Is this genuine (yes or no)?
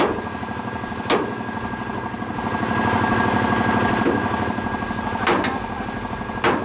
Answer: yes